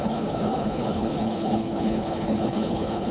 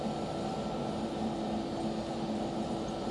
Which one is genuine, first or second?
second